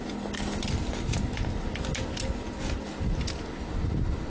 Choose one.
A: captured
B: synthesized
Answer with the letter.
A